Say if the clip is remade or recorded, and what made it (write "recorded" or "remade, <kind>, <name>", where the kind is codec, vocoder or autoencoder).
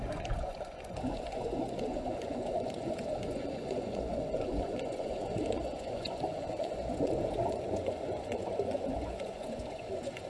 remade, vocoder, Vocos